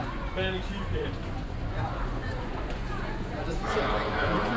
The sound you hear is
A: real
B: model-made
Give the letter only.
B